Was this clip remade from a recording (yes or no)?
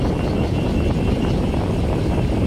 no